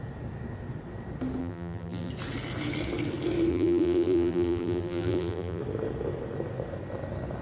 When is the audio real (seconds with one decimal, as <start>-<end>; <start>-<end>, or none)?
0.0-1.4; 2.1-3.5; 5.6-7.4